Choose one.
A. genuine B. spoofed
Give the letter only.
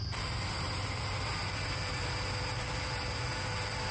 B